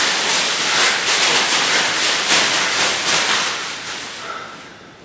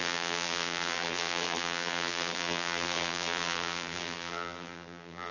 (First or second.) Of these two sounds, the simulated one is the second